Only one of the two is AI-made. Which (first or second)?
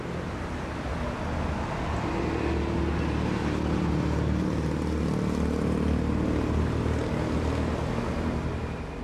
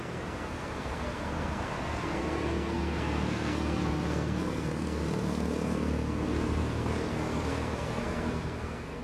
second